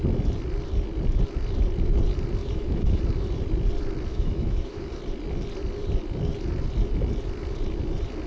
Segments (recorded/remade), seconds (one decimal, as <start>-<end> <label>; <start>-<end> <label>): 0.0-2.4 recorded; 2.4-3.0 remade; 3.0-4.1 recorded; 4.1-4.9 remade; 4.9-8.3 recorded